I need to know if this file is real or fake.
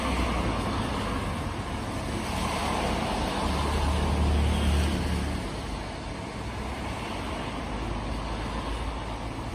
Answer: real